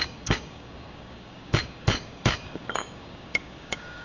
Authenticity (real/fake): fake